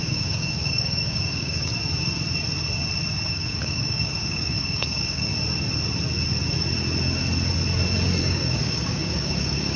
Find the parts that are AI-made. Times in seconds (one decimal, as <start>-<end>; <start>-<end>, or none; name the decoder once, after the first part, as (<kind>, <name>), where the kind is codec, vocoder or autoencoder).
0.0-1.7 (codec, DAC); 3.3-5.3; 8.2-9.8